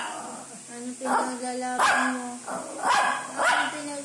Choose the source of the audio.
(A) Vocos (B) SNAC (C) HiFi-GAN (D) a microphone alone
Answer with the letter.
D